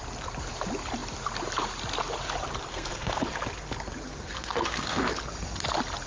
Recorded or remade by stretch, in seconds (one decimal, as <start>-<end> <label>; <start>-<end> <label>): 0.0-2.7 recorded; 2.7-3.2 remade; 3.2-4.1 recorded; 4.1-5.1 remade; 5.1-6.1 recorded